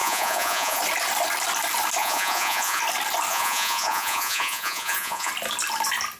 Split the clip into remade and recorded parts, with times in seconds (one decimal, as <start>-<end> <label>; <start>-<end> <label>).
0.0-0.8 remade; 0.8-2.0 recorded; 2.0-2.8 remade; 2.8-3.3 recorded; 3.3-5.3 remade; 5.3-6.2 recorded